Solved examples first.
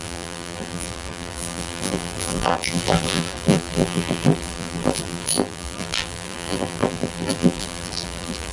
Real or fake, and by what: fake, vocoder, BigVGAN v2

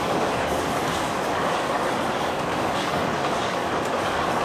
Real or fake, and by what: fake, codec, DAC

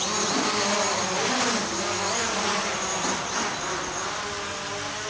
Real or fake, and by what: real